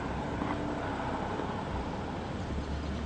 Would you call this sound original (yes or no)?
yes